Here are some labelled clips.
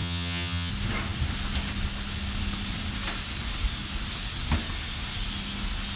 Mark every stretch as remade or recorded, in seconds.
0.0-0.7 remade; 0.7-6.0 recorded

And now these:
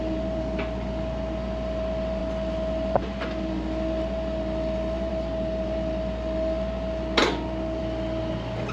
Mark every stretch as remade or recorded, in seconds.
0.0-8.7 recorded